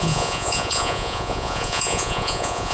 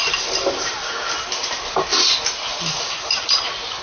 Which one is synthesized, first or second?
first